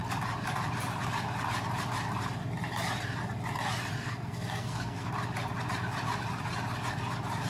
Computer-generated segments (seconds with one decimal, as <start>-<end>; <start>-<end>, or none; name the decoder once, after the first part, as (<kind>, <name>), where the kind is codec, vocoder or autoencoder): 4.0-5.1 (codec, SNAC)